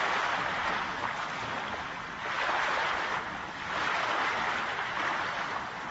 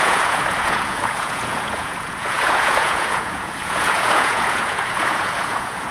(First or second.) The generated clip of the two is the second